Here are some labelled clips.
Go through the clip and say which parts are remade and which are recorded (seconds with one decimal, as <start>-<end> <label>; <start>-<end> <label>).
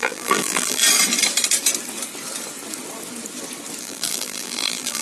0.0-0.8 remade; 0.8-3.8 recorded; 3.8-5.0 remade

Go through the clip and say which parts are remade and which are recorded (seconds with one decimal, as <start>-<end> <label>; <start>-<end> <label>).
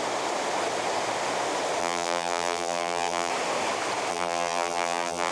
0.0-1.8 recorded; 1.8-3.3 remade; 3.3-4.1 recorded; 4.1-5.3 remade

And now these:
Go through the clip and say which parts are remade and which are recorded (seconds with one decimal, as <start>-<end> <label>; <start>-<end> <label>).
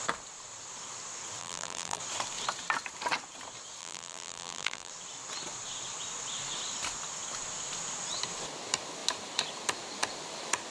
0.0-1.4 recorded; 1.4-2.0 remade; 2.0-3.8 recorded; 3.8-4.9 remade; 4.9-10.7 recorded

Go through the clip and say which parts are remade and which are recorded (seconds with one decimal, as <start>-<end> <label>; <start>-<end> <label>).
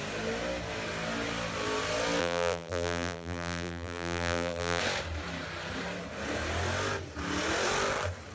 0.0-2.2 recorded; 2.2-4.8 remade; 4.8-8.3 recorded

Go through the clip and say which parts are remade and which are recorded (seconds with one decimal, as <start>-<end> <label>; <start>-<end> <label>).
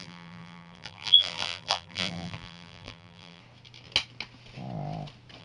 0.0-3.4 remade; 3.4-5.4 recorded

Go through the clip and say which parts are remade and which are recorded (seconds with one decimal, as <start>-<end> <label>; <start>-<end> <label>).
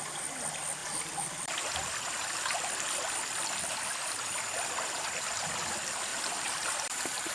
0.0-0.8 recorded; 0.8-5.2 remade; 5.2-6.1 recorded; 6.1-7.3 remade